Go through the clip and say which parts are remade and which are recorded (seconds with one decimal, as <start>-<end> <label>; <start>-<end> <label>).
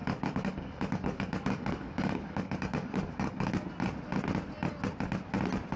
0.0-3.5 remade; 3.5-5.8 recorded